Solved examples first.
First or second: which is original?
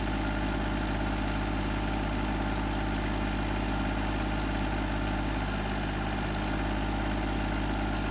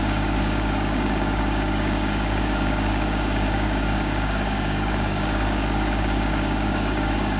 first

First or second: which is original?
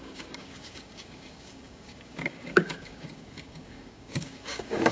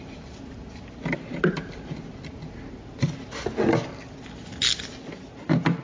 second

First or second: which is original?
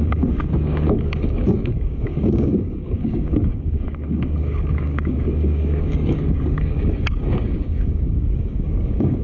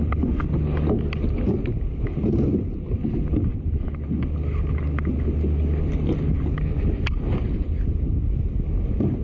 second